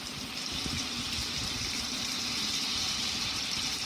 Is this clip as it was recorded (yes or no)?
yes